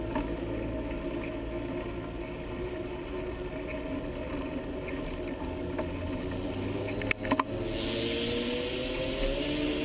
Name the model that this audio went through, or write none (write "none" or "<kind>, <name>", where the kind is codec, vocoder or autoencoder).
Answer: none